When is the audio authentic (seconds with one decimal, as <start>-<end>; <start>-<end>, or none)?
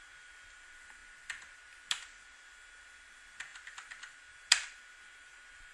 0.0-5.7